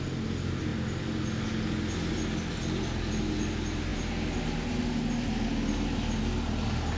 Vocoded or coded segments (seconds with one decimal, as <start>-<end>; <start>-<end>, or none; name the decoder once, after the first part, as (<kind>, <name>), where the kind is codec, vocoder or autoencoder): none